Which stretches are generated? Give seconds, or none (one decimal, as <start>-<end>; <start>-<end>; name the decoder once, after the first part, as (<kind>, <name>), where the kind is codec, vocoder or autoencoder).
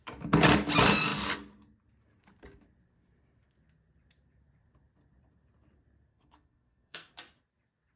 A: 6.1-7.1 (codec, SNAC)